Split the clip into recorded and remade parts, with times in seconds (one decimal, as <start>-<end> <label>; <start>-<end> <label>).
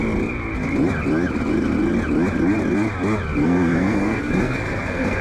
0.0-3.4 recorded; 3.4-5.2 remade